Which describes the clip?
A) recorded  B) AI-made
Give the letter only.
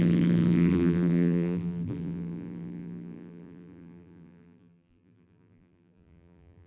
B